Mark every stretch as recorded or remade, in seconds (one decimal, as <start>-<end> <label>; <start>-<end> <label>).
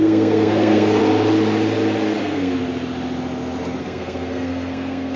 0.0-1.0 remade; 1.0-2.2 recorded; 2.2-2.6 remade; 2.6-3.8 recorded; 3.8-5.2 remade